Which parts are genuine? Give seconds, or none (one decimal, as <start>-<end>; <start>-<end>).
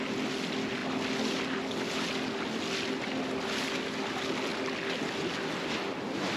0.0-6.4